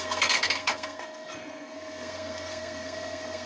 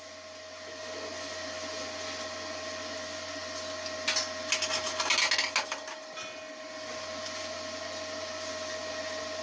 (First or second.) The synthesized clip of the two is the first